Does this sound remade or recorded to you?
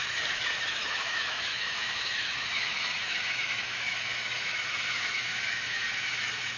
remade